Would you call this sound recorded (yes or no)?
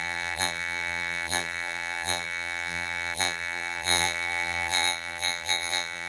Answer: no